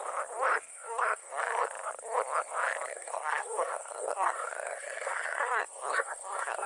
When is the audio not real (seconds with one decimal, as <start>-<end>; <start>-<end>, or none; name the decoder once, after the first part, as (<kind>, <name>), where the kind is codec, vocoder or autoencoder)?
0.7-1.4 (codec, SNAC); 2.9-6.7